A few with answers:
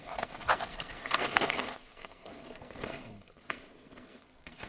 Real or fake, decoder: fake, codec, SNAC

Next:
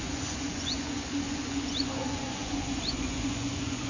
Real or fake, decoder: fake, vocoder, Vocos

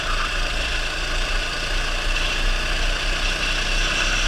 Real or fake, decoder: real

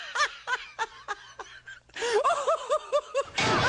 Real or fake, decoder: real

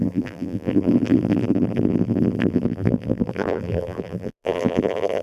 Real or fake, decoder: fake, vocoder, BigVGAN v2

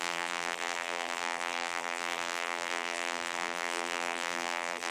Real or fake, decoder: fake, vocoder, BigVGAN v2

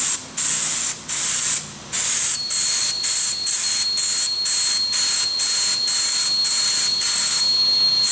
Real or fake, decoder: real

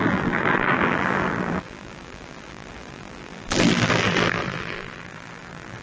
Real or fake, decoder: fake, vocoder, BigVGAN v2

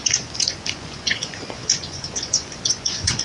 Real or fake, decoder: fake, vocoder, Vocos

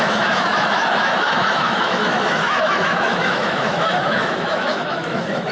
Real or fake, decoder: fake, autoencoder, DAC-VAE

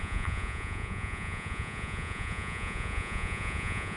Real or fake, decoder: fake, vocoder, Vocos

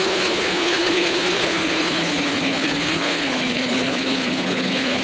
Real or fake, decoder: fake, codec, HILCodec